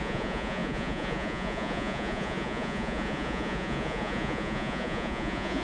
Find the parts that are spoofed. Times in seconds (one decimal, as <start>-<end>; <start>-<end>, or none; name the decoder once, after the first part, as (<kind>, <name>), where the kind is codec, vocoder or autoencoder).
0.0-5.6 (vocoder, Vocos)